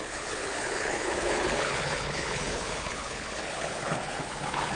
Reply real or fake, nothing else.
fake